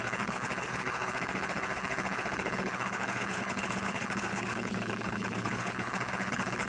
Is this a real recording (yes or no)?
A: no